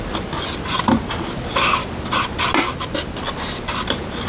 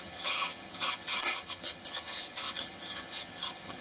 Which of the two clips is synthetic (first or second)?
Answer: second